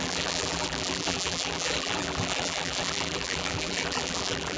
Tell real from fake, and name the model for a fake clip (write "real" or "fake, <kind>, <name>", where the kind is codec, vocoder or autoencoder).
fake, vocoder, BigVGAN v2